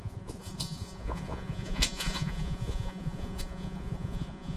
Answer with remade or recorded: remade